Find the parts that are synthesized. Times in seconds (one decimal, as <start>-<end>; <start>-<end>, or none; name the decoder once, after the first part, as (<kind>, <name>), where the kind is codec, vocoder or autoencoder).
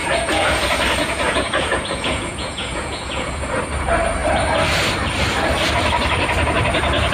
0.0-0.6 (vocoder, Vocos); 1.0-3.6